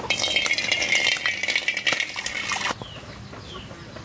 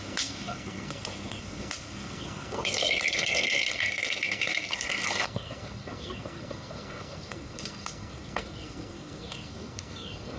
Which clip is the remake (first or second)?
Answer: second